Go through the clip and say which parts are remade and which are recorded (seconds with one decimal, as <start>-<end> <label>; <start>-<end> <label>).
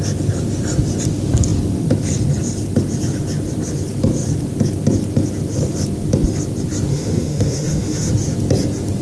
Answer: 0.0-6.9 recorded; 6.9-8.1 remade; 8.1-9.0 recorded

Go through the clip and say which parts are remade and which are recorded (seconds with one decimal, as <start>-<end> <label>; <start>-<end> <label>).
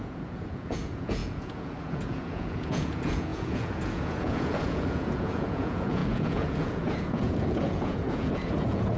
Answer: 0.0-9.0 remade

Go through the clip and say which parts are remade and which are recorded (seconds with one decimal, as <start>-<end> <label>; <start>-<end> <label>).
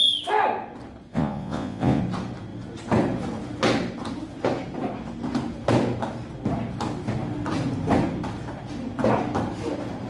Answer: 0.0-1.1 recorded; 1.1-2.0 remade; 2.0-10.1 recorded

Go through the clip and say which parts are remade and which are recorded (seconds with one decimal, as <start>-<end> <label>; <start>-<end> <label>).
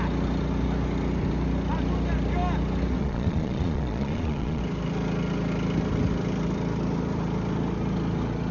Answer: 0.0-3.0 recorded; 3.0-4.6 remade; 4.6-8.5 recorded